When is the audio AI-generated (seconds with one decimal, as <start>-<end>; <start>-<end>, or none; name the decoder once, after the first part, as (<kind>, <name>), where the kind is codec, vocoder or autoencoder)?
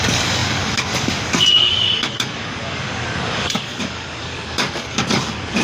0.0-5.6 (codec, DAC)